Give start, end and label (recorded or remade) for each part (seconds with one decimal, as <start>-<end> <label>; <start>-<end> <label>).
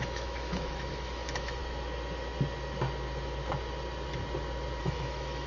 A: 0.0-1.6 remade; 1.6-4.8 recorded; 4.8-5.5 remade